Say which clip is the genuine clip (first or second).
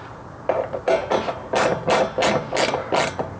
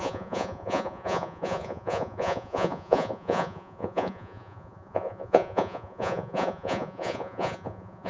first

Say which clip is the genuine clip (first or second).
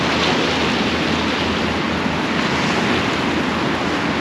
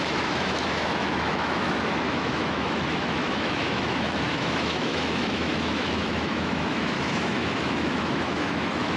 first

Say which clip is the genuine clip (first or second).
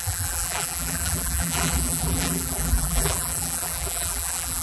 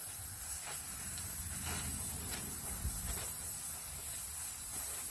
second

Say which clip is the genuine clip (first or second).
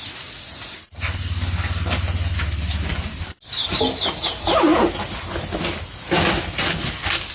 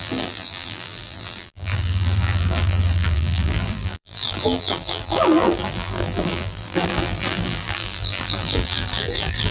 first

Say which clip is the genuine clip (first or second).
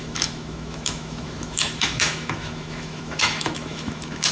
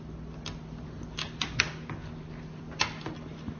second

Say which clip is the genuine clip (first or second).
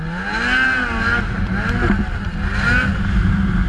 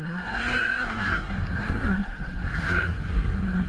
first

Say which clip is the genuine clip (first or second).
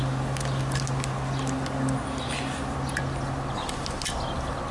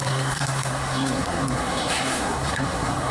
first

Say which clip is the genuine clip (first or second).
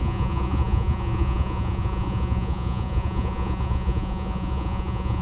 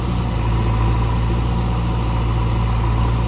second